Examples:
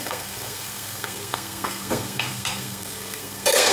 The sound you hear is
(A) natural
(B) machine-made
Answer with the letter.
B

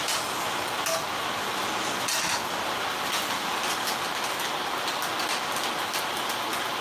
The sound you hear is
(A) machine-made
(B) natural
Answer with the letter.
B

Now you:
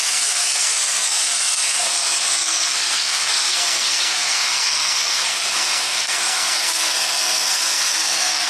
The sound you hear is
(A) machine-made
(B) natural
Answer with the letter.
A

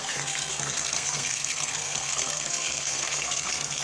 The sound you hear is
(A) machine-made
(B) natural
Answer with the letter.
A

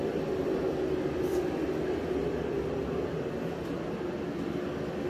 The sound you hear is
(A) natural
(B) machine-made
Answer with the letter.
A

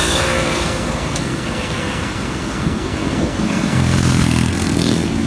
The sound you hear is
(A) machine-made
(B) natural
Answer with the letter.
A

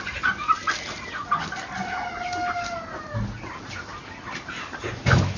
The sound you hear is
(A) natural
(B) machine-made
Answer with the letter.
A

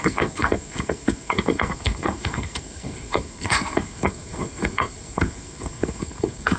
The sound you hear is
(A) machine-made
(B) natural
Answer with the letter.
A